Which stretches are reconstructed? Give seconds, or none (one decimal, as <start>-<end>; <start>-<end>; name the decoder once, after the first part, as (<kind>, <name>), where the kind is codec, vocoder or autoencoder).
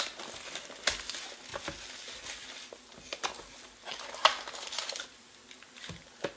none